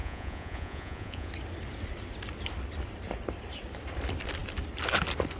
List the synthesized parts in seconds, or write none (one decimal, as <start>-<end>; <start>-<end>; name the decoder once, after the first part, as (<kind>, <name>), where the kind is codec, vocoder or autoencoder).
0.0-1.3 (vocoder, Vocos)